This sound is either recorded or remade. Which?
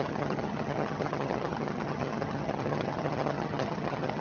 remade